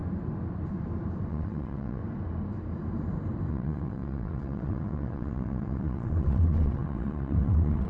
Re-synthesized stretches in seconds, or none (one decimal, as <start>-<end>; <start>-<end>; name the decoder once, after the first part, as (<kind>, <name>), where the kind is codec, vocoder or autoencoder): 1.3-2.0 (vocoder, WaveNeXt); 3.5-7.9